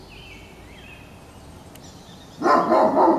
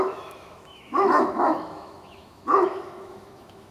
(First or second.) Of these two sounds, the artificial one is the second